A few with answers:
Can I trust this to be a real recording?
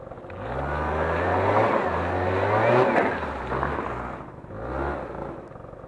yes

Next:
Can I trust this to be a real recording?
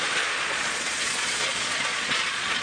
no